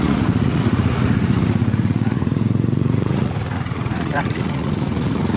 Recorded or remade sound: remade